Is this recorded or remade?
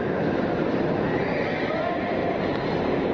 recorded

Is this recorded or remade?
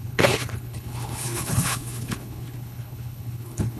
remade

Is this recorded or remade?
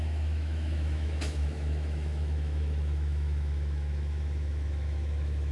remade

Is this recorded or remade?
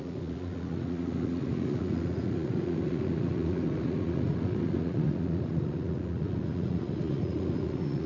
remade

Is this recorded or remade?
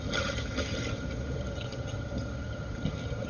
remade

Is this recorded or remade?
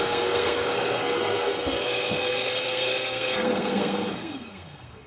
remade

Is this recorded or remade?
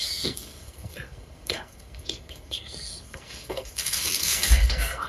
remade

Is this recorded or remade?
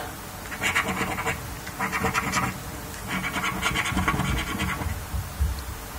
recorded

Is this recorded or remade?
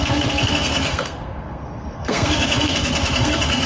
remade